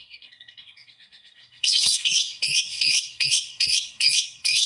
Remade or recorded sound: remade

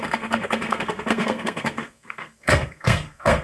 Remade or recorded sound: remade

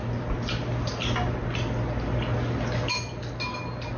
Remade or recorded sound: recorded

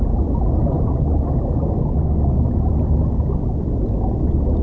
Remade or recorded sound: recorded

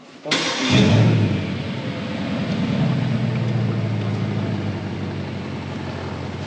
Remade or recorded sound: recorded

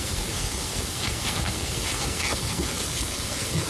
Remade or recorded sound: remade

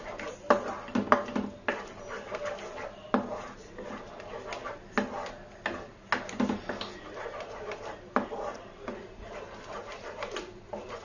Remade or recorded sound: recorded